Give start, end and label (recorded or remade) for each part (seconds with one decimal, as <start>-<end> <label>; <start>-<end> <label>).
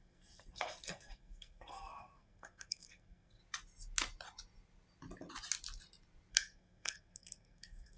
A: 0.0-3.4 remade; 3.4-6.3 recorded; 6.3-8.0 remade